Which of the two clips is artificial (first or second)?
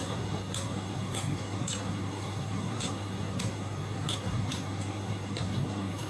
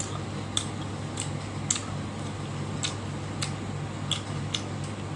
first